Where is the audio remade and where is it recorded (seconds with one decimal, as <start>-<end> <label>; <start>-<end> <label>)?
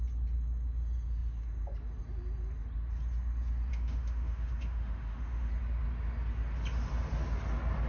0.0-3.7 recorded; 3.7-5.5 remade; 5.5-7.9 recorded